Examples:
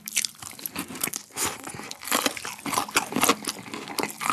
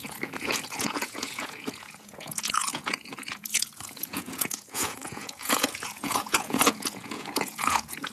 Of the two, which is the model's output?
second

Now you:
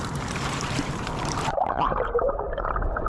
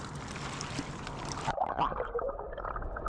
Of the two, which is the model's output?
first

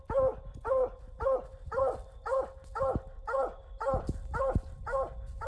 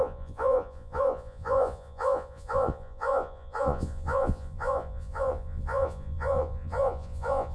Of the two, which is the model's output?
second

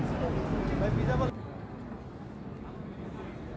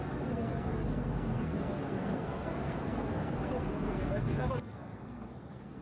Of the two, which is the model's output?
second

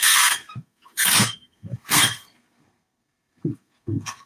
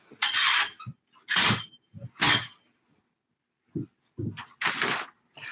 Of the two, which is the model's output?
first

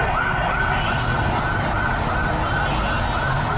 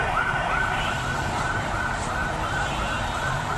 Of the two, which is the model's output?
second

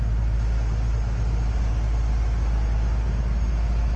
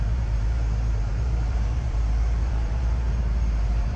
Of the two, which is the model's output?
second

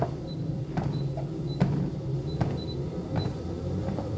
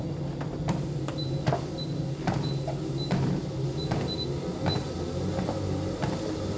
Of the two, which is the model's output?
first